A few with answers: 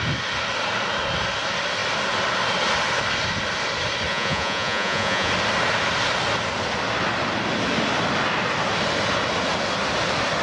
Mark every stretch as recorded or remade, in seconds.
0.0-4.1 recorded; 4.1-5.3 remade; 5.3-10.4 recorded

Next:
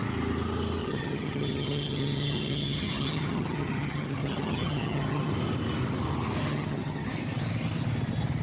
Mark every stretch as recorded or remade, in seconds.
0.0-0.8 recorded; 0.8-5.3 remade; 5.3-6.5 recorded; 6.5-7.1 remade; 7.1-8.4 recorded

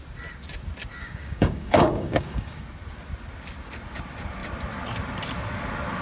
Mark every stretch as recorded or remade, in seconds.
0.0-1.0 recorded; 1.0-2.6 remade; 2.6-6.0 recorded

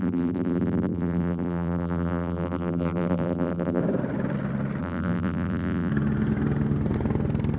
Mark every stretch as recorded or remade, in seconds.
0.0-3.8 remade; 3.8-4.8 recorded; 4.8-5.9 remade; 5.9-7.6 recorded